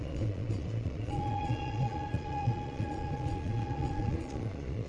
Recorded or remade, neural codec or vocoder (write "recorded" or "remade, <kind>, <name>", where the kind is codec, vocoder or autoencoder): remade, vocoder, Vocos